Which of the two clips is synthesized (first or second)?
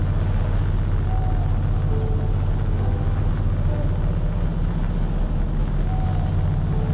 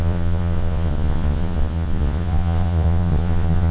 second